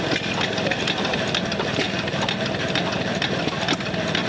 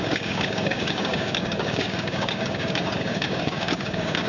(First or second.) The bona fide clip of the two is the first